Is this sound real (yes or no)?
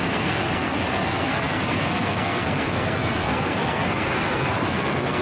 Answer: no